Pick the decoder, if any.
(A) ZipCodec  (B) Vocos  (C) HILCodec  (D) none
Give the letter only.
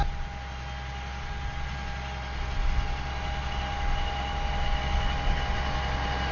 D